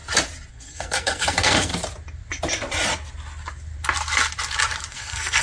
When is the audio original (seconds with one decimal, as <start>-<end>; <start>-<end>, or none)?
0.0-0.5; 1.7-4.9